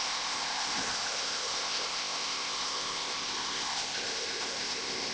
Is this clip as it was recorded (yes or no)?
no